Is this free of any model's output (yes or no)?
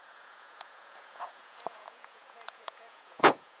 no